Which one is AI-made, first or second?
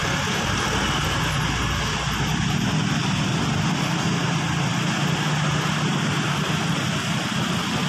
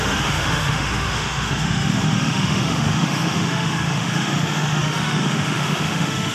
second